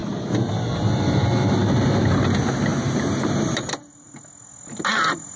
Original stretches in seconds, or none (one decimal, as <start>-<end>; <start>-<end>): 0.0-2.7; 3.8-5.4